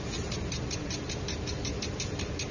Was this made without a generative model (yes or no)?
yes